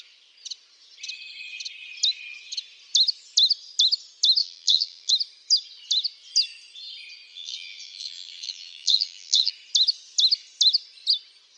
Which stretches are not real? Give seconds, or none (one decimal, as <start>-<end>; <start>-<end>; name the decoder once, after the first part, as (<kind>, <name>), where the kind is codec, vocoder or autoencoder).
4.4-5.1 (vocoder, BigVGAN v2); 7.3-9.5